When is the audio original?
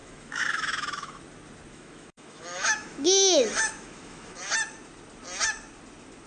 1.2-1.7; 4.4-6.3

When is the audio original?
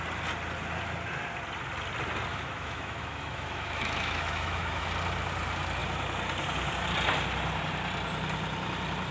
0.0-2.3; 4.9-9.1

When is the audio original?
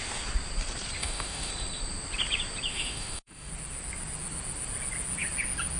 0.0-1.0; 1.5-2.7; 3.5-5.8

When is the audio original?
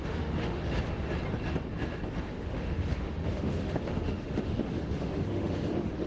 0.6-2.3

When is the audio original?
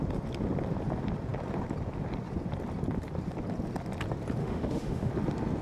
0.0-4.4; 5.1-5.6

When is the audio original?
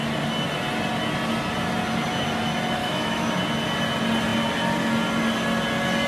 0.0-2.8; 3.3-6.1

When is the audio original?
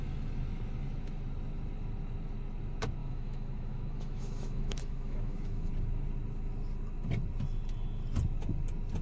0.0-3.0; 5.7-9.0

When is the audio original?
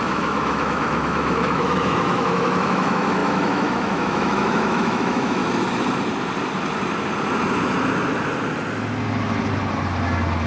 5.4-10.5